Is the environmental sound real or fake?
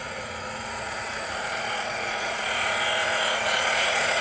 fake